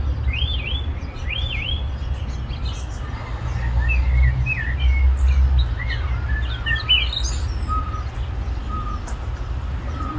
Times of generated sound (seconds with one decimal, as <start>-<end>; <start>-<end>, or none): none